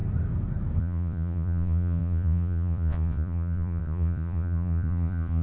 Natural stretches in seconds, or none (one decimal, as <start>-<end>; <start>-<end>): 0.0-0.8